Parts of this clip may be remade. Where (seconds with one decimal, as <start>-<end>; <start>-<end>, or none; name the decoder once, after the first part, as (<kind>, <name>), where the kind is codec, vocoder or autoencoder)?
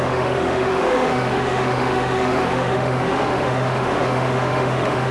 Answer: 0.0-5.1 (autoencoder, DAC-VAE)